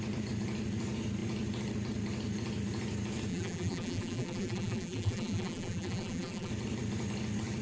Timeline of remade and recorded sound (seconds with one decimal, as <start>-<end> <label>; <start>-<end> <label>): 0.0-3.3 recorded; 3.3-6.5 remade; 6.5-7.6 recorded

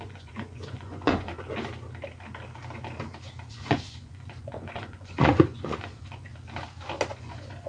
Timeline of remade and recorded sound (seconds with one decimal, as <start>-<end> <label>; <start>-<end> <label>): 0.0-1.3 remade; 1.3-3.5 recorded; 3.5-6.3 remade; 6.3-7.1 recorded; 7.1-7.7 remade

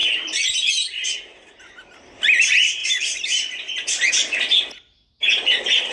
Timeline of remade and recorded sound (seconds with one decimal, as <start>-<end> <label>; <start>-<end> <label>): 0.0-0.7 remade; 0.7-2.8 recorded; 2.8-4.1 remade; 4.1-5.9 recorded

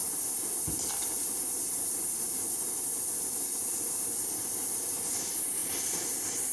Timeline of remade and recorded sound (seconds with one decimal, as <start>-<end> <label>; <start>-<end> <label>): 0.0-5.6 recorded; 5.6-6.5 remade

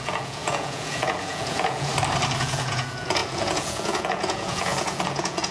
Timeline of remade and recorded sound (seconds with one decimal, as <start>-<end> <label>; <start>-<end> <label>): 0.0-1.9 remade; 1.9-2.4 recorded; 2.4-5.5 remade

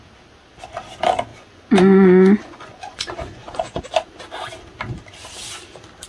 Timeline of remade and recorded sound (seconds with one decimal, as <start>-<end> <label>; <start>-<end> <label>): 0.0-1.3 recorded; 1.3-3.8 remade; 3.8-6.1 recorded

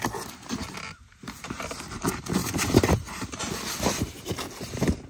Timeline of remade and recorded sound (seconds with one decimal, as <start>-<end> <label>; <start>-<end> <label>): 0.0-2.4 recorded; 2.4-3.4 remade; 3.4-5.1 recorded